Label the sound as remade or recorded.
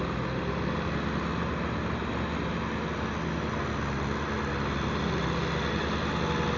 recorded